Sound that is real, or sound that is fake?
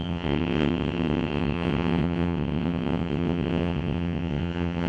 fake